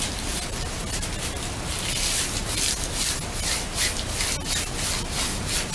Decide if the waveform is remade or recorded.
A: recorded